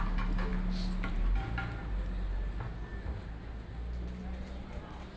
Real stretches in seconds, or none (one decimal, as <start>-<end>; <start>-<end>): 0.0-5.2